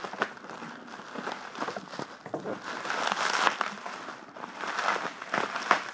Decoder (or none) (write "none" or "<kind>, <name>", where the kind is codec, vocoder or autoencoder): none